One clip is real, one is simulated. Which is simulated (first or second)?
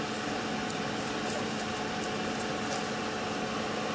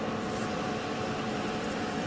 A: second